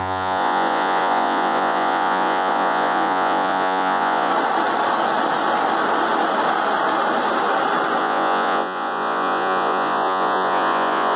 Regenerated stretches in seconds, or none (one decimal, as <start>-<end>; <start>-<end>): 0.0-4.3; 8.0-11.2